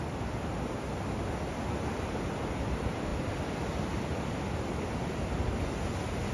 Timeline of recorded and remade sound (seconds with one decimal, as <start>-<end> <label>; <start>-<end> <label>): 0.0-6.3 recorded